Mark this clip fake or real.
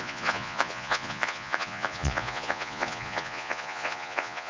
fake